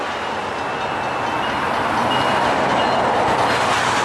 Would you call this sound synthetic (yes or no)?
no